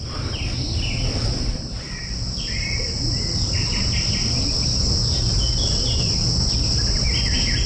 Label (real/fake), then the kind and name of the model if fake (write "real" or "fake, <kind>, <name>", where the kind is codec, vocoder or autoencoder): real